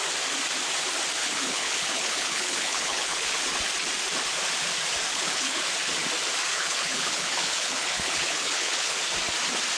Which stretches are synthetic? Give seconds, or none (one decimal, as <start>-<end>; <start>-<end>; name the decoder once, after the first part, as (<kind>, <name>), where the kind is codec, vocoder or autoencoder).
1.2-3.3 (codec, HILCodec); 5.1-5.6; 6.5-9.0